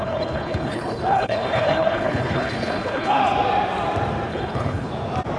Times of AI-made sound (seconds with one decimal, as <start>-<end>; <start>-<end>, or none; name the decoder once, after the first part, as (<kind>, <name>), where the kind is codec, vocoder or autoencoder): 0.0-3.2 (codec, HILCodec); 4.3-4.9